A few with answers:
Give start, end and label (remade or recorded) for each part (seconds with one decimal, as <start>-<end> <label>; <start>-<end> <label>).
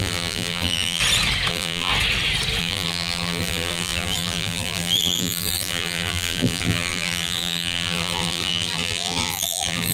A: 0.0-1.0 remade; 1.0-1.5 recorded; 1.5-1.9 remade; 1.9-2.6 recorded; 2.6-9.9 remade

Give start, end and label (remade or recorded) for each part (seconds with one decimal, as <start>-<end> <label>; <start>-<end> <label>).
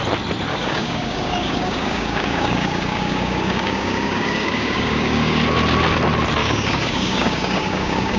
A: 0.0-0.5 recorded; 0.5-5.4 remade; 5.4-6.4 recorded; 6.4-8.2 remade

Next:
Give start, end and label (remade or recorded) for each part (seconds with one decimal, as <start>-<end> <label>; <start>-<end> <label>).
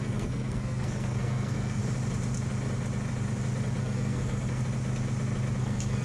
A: 0.0-1.8 remade; 1.8-3.8 recorded; 3.8-4.6 remade; 4.6-5.6 recorded; 5.6-6.0 remade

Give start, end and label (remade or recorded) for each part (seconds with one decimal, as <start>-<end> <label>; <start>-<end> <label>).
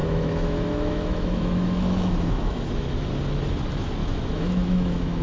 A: 0.0-3.1 remade; 3.1-4.0 recorded; 4.0-5.2 remade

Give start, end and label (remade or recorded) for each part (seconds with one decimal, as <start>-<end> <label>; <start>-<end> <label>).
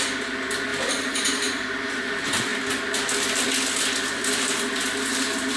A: 0.0-5.6 recorded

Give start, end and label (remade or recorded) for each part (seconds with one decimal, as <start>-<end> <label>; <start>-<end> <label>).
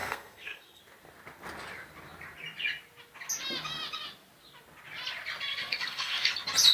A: 0.0-0.8 remade; 0.8-5.5 recorded; 5.5-6.3 remade; 6.3-6.7 recorded